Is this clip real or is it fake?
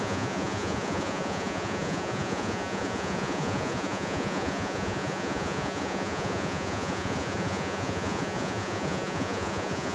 fake